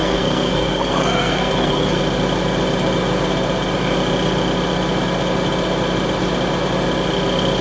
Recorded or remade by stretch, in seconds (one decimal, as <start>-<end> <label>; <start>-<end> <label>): 0.0-2.0 remade; 2.0-7.6 recorded